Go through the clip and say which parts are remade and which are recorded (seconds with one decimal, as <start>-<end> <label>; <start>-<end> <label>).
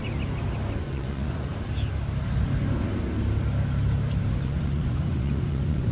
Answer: 0.0-0.8 recorded; 0.8-1.5 remade; 1.5-4.3 recorded; 4.3-5.9 remade